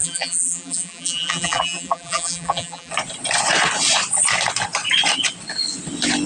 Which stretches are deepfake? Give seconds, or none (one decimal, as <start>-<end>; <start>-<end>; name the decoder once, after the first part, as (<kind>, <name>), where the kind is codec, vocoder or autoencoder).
0.0-2.9 (vocoder, BigVGAN v2)